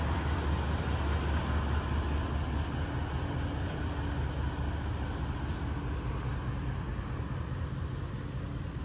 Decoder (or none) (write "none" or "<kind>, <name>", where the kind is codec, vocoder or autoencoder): none